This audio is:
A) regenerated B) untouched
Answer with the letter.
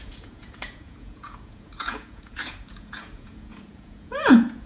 A